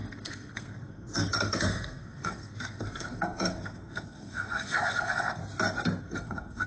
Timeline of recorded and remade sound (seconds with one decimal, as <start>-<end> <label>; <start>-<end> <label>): 0.0-5.4 remade; 5.4-6.0 recorded; 6.0-6.7 remade